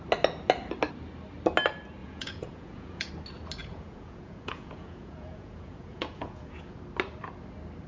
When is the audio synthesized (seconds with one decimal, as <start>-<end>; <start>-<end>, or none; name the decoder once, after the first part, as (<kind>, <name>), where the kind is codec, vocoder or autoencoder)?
2.0-3.1 (vocoder, Vocos); 3.6-6.8